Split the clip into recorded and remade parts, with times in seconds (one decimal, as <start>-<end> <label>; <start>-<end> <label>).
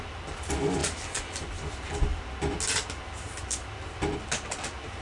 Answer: 0.0-5.0 recorded